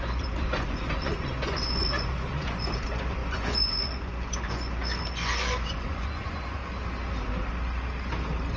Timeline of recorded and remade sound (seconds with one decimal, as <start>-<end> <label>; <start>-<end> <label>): 0.0-6.6 remade; 6.6-8.6 recorded